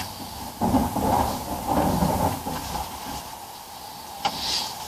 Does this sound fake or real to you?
real